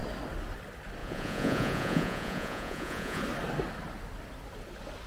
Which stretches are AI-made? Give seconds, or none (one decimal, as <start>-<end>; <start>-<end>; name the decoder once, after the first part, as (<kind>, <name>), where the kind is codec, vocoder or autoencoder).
1.0-3.2 (vocoder, Vocos)